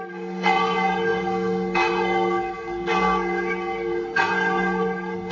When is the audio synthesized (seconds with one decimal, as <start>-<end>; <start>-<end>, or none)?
0.0-5.3